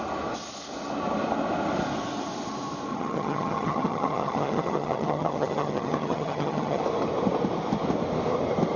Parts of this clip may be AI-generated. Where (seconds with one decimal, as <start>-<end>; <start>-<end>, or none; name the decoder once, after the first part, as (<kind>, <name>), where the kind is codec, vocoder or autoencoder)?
2.9-6.8 (vocoder, HiFi-GAN)